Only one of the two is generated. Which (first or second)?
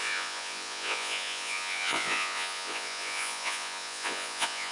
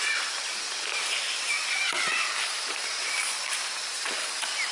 first